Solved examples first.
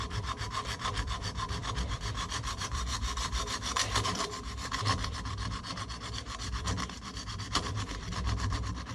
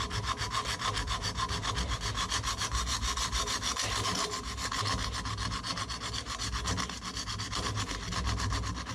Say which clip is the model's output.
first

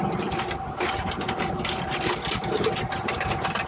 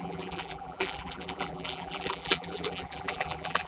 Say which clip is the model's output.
second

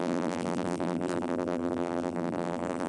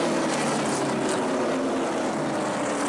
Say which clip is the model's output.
first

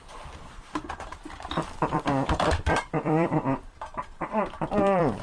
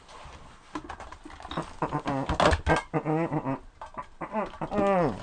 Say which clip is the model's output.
first